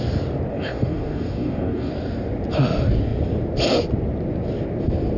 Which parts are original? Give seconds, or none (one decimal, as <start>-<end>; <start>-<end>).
0.0-0.5; 1.9-5.2